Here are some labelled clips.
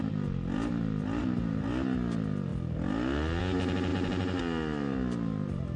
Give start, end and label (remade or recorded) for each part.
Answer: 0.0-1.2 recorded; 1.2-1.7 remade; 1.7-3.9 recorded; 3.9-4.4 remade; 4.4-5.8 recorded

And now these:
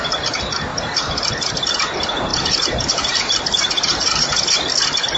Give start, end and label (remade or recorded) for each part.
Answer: 0.0-0.7 recorded; 0.7-1.5 remade; 1.5-2.3 recorded; 2.3-4.5 remade; 4.5-5.2 recorded

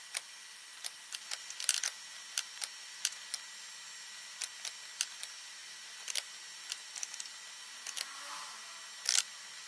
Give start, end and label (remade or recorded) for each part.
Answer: 0.0-9.7 recorded

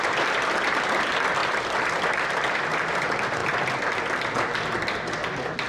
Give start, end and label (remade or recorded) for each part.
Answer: 0.0-1.4 recorded; 1.4-2.9 remade; 2.9-5.7 recorded

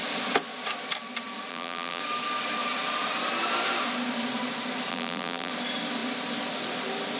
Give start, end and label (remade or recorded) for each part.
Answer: 0.0-1.5 recorded; 1.5-2.0 remade; 2.0-4.9 recorded; 4.9-5.5 remade; 5.5-7.2 recorded